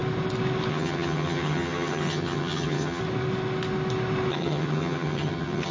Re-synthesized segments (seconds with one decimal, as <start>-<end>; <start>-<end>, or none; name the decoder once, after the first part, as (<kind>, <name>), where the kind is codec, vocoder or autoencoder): 0.7-3.0 (vocoder, HiFi-GAN); 4.3-5.7

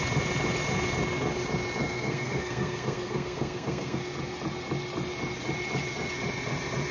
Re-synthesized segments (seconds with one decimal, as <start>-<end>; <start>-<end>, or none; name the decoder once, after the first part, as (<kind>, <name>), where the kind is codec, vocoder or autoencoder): 1.8-4.0 (codec, SNAC)

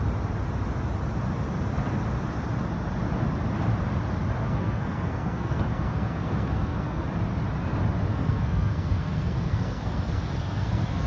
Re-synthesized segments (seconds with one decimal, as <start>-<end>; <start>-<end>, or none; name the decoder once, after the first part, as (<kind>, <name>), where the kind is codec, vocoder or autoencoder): 4.4-7.0 (codec, SNAC); 8.1-11.1

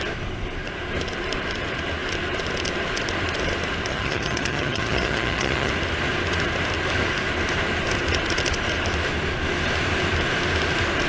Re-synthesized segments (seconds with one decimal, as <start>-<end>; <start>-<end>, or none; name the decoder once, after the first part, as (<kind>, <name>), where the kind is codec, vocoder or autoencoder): 3.9-5.7 (vocoder, HiFi-GAN)

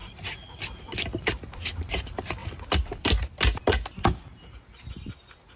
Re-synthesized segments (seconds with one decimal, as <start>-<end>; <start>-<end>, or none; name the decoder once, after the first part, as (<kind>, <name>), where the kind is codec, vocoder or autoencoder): 0.0-0.6 (vocoder, Vocos)

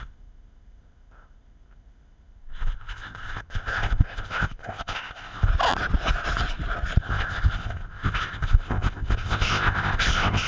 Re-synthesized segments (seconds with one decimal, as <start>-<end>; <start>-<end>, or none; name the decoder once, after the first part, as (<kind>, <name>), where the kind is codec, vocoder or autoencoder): 0.0-5.5 (codec, ZipCodec); 7.0-10.5